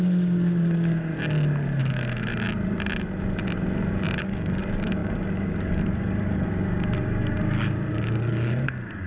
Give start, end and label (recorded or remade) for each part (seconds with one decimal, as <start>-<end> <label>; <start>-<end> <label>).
0.0-1.1 remade; 1.1-1.8 recorded; 1.8-2.3 remade; 2.3-4.2 recorded; 4.2-9.1 remade

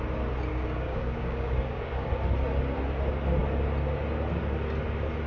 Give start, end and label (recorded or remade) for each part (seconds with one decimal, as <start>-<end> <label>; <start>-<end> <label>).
0.0-0.5 recorded; 0.5-2.1 remade; 2.1-5.3 recorded

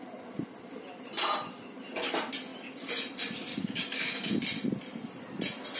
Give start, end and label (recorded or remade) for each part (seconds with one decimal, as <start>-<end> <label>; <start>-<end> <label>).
0.0-3.5 recorded; 3.5-4.3 remade; 4.3-5.8 recorded

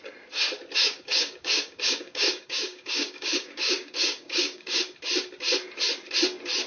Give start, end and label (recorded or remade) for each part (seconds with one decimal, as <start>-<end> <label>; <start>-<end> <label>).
0.0-0.8 recorded; 0.8-4.8 remade; 4.8-6.7 recorded

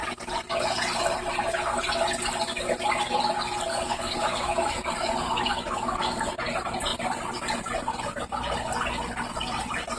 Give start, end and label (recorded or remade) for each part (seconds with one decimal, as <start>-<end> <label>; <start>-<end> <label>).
0.0-3.7 recorded; 3.7-6.3 remade; 6.3-10.0 recorded

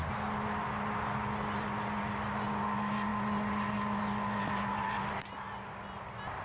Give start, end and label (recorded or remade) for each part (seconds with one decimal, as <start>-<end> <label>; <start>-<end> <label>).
0.0-6.4 recorded